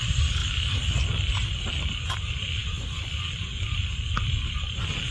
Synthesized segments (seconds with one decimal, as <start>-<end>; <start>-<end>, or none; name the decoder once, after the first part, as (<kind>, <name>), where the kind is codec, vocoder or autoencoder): none